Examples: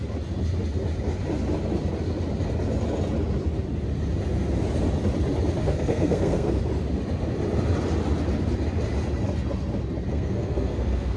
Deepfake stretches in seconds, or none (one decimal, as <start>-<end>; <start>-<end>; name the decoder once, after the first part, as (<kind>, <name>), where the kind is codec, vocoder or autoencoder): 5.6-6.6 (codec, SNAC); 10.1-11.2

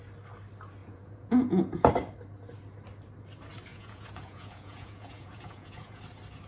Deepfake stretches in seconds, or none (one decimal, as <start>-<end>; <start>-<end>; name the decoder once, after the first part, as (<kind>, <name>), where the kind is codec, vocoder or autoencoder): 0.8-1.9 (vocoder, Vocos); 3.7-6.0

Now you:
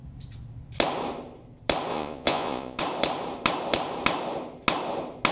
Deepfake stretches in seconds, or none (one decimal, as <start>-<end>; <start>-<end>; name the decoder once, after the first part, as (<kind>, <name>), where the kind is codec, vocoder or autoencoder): 1.9-2.8 (vocoder, Vocos)

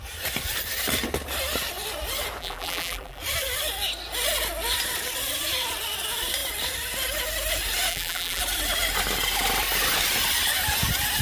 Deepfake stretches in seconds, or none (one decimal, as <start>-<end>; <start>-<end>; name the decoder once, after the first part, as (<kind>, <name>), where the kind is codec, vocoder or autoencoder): 2.4-3.2 (vocoder, BigVGAN v2); 7.9-8.4

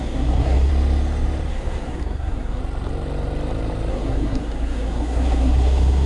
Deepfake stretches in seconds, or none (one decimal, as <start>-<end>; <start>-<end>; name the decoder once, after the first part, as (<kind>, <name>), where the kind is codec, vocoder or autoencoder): 0.0-0.7 (codec, SNAC); 1.5-2.6; 3.9-6.1

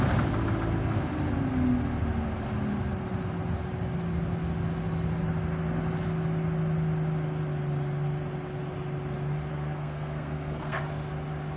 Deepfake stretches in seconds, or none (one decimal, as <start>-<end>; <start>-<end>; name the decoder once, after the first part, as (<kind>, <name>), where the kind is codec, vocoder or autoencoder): 9.5-10.8 (codec, SNAC)